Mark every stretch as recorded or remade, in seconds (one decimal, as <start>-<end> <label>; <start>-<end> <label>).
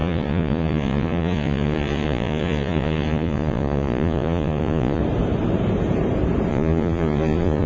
0.0-5.0 remade; 5.0-6.5 recorded; 6.5-7.7 remade